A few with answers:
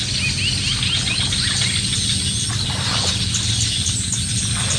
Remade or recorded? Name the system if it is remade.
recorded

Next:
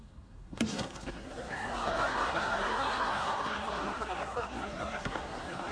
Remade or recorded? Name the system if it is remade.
remade, codec, SNAC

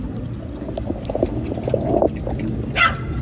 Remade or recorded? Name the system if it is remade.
recorded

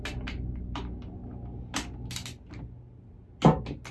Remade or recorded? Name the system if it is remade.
recorded